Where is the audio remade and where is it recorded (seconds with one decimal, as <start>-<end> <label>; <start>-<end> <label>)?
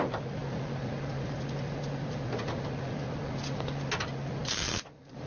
0.0-5.3 recorded